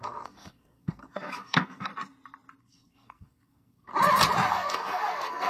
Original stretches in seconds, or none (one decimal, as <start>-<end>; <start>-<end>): 1.9-2.6; 3.9-4.5